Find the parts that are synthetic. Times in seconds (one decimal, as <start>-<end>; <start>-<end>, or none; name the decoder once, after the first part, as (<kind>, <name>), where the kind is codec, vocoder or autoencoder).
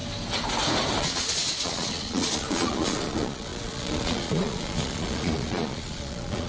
1.0-6.5 (vocoder, Vocos)